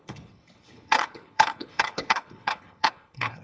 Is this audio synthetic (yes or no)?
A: yes